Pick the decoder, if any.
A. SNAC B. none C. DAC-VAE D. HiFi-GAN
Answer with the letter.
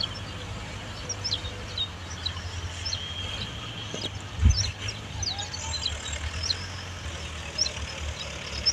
B